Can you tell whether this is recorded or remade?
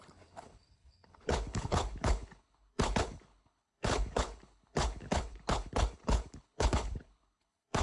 remade